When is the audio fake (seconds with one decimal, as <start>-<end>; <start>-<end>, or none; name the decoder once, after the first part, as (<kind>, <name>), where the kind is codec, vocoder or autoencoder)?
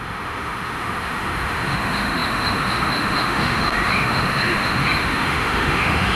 0.0-6.2 (autoencoder, DAC-VAE)